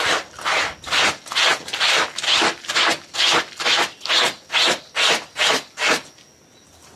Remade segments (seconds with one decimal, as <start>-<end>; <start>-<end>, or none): none